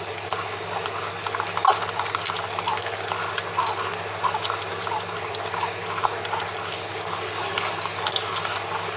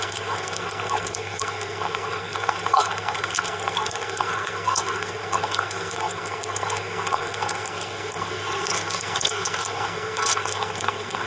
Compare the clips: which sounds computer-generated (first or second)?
second